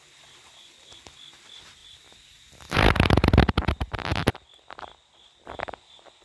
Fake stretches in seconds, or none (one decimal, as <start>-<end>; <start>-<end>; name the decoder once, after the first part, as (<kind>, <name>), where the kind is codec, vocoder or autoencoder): 1.8-3.5 (vocoder, BigVGAN v2)